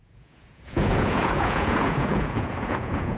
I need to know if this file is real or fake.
fake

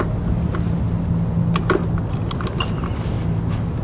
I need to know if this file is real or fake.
real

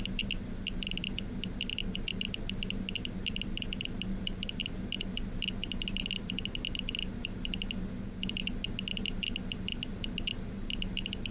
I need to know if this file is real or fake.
real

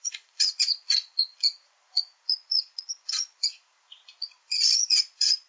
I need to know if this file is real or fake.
fake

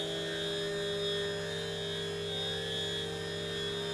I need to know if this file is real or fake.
real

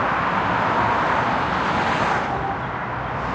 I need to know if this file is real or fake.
real